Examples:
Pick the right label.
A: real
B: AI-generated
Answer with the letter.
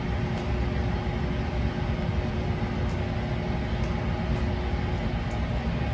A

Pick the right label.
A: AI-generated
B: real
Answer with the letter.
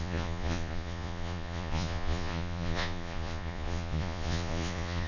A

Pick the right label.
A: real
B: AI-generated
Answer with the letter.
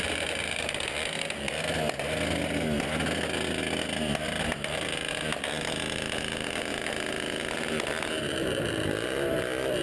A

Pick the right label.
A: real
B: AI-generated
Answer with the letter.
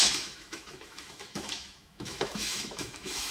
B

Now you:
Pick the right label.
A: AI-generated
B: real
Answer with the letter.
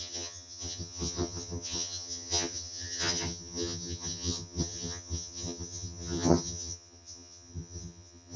A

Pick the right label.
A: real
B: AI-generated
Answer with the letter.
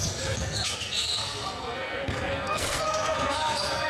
B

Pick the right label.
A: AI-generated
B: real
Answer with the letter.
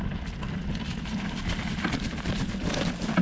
B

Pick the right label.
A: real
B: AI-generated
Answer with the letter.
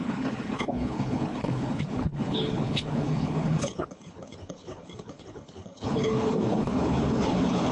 B